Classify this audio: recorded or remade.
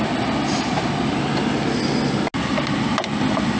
recorded